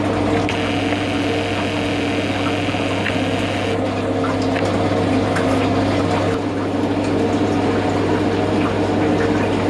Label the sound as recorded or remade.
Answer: recorded